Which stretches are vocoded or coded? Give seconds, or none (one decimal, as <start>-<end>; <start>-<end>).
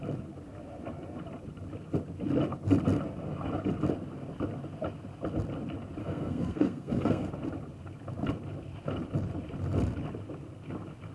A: 6.0-7.3